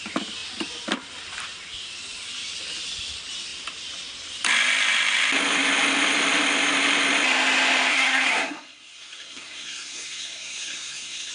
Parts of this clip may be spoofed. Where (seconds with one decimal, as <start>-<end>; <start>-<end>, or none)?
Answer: 7.9-11.3